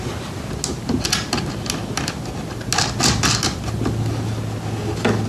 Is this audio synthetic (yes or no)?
no